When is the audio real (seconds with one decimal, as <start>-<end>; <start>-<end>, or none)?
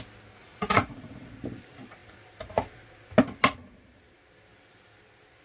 0.0-0.4; 1.3-5.4